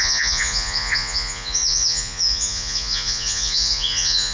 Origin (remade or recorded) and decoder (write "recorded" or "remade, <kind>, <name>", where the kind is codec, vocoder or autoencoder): remade, vocoder, Vocos